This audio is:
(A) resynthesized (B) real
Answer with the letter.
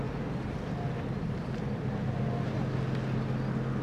B